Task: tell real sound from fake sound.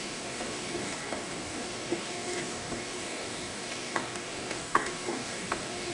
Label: fake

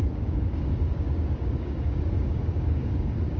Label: fake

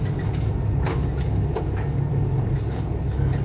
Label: fake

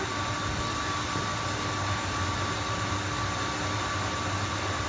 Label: real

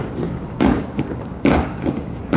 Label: fake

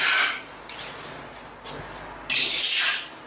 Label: real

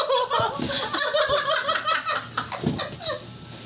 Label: real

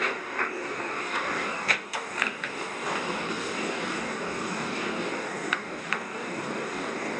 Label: fake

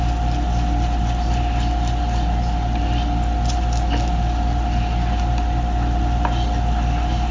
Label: real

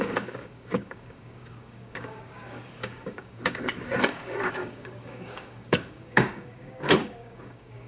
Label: fake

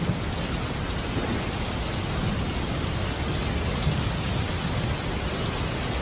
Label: real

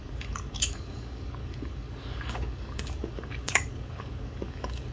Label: fake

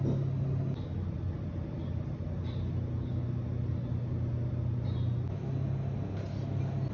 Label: real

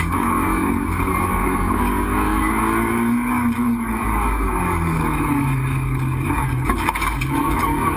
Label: fake